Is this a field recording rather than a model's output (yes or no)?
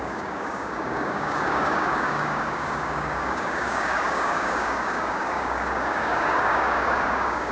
no